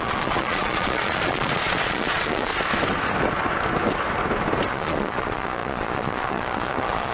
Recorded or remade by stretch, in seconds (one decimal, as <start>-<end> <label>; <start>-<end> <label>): 0.0-2.5 remade; 2.5-4.7 recorded; 4.7-7.1 remade